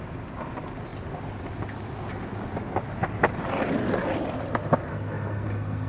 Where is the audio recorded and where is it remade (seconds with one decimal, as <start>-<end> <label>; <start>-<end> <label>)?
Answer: 0.0-4.9 recorded; 4.9-5.9 remade